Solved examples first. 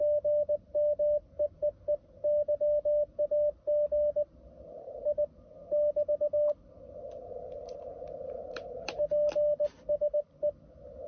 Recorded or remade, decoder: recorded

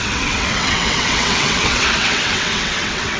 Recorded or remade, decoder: remade, vocoder, WaveNeXt